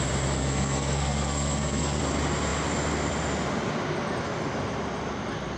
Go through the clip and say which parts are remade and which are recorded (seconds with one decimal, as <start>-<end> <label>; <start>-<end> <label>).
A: 0.0-0.4 recorded; 0.4-2.0 remade; 2.0-5.6 recorded